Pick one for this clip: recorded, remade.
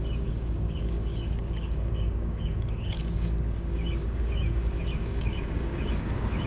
remade